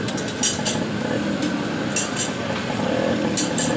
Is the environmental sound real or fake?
real